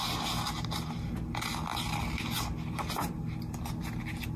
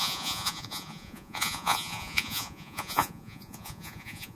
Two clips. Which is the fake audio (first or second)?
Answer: second